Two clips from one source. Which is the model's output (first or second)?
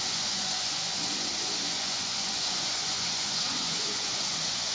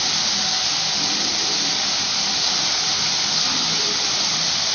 first